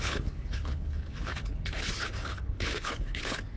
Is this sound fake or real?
fake